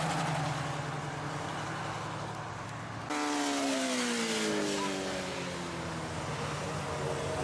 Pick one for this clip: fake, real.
real